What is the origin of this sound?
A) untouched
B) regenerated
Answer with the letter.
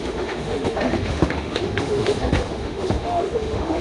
B